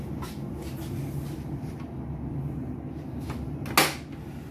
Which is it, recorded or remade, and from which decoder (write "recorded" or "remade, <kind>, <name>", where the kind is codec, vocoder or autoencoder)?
recorded